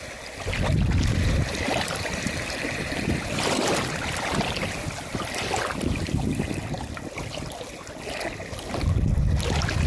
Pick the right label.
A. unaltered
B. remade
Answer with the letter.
A